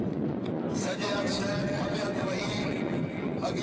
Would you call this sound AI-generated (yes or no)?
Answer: yes